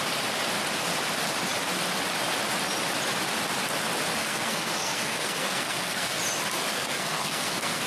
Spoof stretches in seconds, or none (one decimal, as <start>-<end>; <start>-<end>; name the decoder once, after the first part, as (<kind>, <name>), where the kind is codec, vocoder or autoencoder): 4.2-6.2 (codec, SNAC); 6.7-7.9